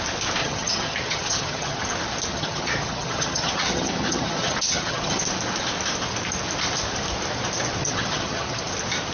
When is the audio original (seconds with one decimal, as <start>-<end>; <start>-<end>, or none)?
0.0-0.4; 1.9-2.3; 5.2-7.8; 8.6-9.1